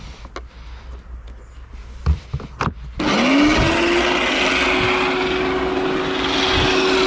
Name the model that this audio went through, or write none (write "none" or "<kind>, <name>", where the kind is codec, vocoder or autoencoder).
none